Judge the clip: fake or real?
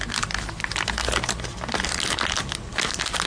real